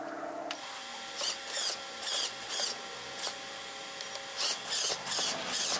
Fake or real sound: real